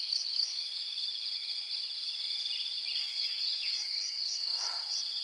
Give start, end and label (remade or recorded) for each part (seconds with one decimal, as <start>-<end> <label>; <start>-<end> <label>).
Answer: 0.0-1.2 remade; 1.2-3.0 recorded; 3.0-4.5 remade; 4.5-5.2 recorded